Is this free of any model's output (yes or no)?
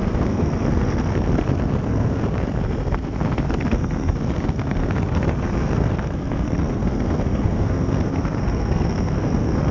no